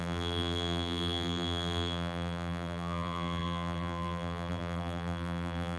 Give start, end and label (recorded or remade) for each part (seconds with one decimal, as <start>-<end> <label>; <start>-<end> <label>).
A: 0.0-5.8 remade